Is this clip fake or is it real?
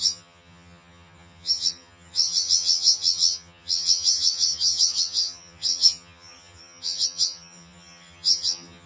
fake